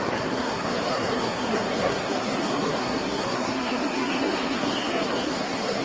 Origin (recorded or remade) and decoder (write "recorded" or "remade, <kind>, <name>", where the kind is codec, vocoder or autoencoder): remade, codec, SNAC